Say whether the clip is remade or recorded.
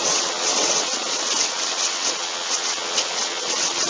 remade